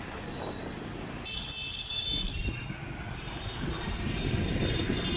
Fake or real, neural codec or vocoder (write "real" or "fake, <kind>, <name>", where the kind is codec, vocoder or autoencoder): real